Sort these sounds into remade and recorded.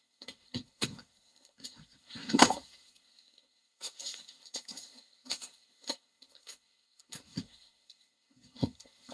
remade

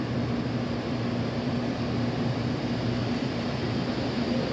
recorded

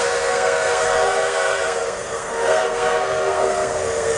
remade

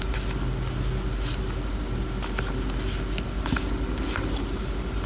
recorded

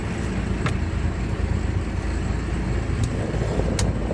recorded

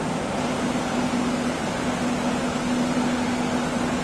recorded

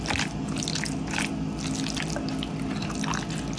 recorded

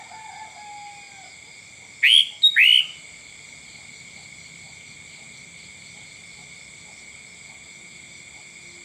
recorded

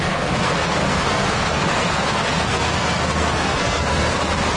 remade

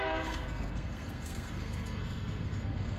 remade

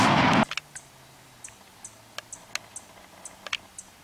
recorded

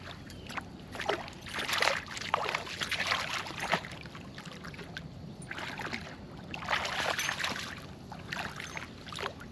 recorded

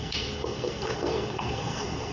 remade